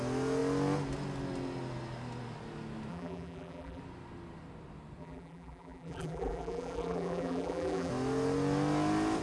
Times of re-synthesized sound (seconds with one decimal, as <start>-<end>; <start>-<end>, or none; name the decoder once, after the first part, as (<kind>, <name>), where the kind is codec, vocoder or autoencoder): 2.9-3.8 (vocoder, BigVGAN v2); 5.0-7.9

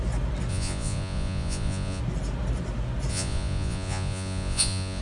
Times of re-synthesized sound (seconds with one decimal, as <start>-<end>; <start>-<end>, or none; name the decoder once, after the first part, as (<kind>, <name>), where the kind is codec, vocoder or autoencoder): 0.5-2.0 (vocoder, Vocos); 3.1-5.0

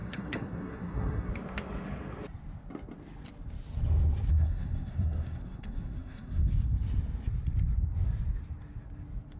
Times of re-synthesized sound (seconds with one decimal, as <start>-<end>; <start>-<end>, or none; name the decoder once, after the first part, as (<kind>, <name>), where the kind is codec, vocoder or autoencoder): 0.0-1.3 (codec, SNAC); 4.3-6.5

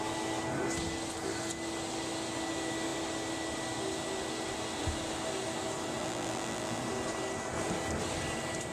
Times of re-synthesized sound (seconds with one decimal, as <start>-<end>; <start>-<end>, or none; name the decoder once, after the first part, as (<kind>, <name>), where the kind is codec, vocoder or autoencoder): 6.0-6.8 (vocoder, BigVGAN v2)